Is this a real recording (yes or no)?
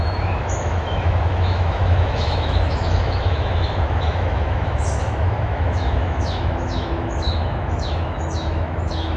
no